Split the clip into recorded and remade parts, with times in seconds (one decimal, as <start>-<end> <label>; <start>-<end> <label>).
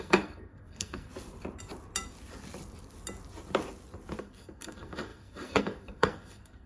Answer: 0.0-1.1 remade; 1.1-4.2 recorded; 4.2-6.7 remade